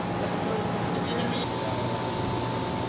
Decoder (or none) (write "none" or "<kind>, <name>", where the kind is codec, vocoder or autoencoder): none